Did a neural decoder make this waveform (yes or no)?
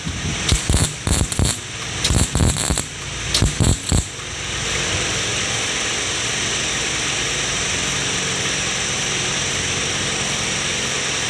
no